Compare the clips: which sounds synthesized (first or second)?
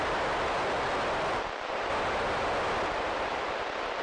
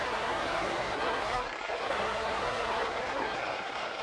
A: second